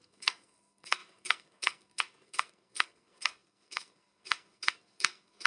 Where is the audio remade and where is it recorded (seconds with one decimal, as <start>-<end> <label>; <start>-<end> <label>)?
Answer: 0.0-5.5 remade